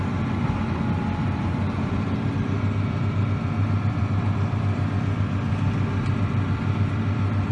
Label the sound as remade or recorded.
remade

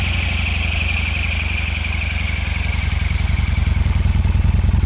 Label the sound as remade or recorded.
recorded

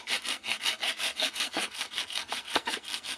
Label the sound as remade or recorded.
remade